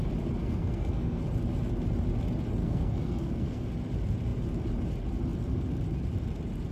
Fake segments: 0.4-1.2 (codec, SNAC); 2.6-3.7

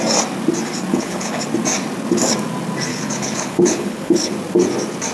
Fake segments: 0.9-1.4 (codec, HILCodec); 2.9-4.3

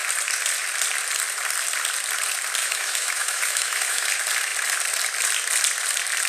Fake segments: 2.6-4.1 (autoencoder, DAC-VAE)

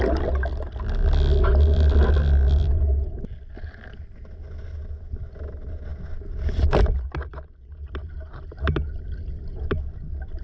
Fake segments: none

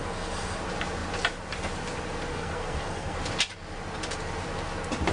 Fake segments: 0.0-0.6 (codec, SNAC); 2.3-3.2